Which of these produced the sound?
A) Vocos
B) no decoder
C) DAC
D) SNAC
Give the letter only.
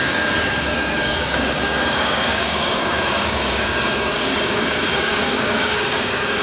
C